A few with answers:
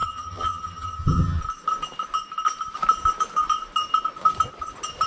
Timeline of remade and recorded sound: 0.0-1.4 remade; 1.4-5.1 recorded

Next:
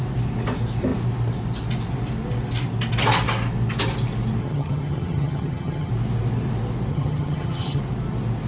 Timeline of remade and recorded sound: 0.0-4.4 recorded; 4.4-5.9 remade; 5.9-6.9 recorded; 6.9-7.8 remade; 7.8-8.5 recorded

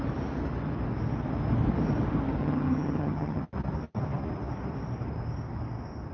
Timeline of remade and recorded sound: 0.0-2.4 recorded; 2.4-3.4 remade; 3.4-6.1 recorded

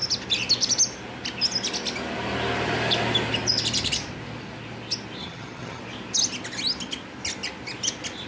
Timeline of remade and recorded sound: 0.0-5.2 recorded; 5.2-5.8 remade; 5.8-8.3 recorded

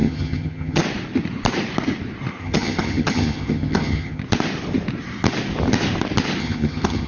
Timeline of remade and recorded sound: 0.0-0.8 remade; 0.8-2.4 recorded; 2.4-4.2 remade; 4.2-6.4 recorded; 6.4-7.1 remade